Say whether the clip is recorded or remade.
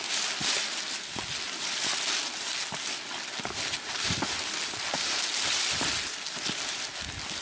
recorded